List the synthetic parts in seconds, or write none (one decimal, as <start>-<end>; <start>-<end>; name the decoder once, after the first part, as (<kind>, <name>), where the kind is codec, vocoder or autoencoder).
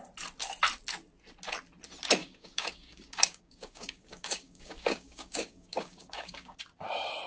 2.2-6.6 (codec, DAC)